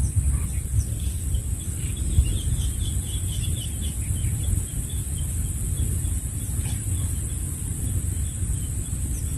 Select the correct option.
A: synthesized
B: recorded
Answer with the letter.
B